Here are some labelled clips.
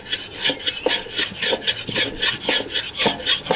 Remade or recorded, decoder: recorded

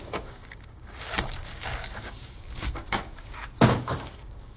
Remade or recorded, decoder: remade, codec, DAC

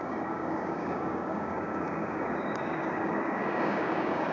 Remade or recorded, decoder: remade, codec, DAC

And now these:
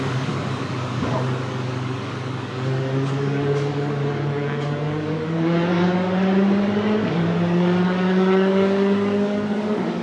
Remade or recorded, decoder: remade, codec, DAC